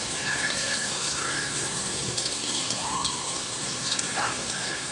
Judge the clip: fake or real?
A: fake